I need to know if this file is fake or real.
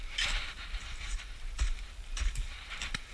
fake